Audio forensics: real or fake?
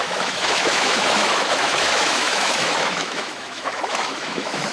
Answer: fake